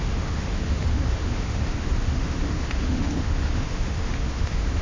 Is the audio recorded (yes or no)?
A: no